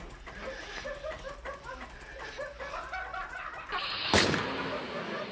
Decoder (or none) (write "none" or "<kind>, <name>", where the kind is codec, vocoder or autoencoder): none